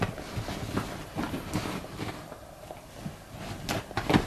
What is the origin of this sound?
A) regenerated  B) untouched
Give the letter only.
B